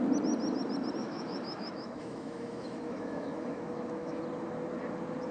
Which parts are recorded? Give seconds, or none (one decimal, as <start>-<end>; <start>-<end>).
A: 0.0-1.0; 4.2-5.3